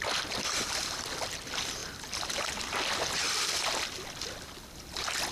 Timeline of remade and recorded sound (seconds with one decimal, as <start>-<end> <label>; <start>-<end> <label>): 0.0-5.3 recorded